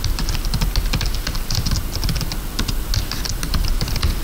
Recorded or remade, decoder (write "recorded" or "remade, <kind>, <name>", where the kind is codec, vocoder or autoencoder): recorded